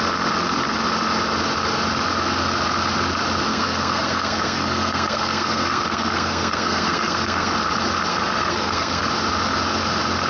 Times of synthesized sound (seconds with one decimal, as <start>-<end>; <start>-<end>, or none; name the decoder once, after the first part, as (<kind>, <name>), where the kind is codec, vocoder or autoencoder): 3.5-7.5 (codec, SNAC); 8.1-9.0